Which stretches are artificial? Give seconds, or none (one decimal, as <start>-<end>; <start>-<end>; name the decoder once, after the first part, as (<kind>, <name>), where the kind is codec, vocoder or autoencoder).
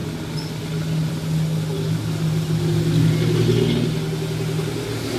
none